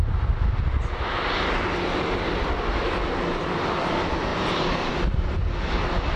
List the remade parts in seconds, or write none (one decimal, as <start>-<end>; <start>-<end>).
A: 4.3-4.9